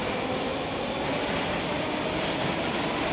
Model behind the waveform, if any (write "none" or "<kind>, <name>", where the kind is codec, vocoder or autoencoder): none